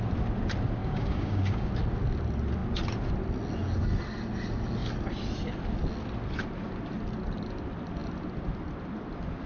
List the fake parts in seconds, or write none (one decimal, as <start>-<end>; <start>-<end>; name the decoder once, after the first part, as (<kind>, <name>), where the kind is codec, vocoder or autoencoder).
0.8-1.7 (codec, DAC)